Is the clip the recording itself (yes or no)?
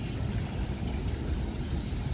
yes